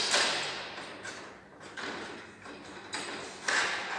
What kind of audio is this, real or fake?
real